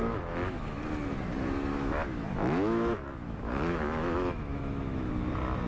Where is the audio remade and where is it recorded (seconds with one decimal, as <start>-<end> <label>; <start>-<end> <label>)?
0.0-0.8 remade; 0.8-1.7 recorded; 1.7-5.1 remade; 5.1-5.7 recorded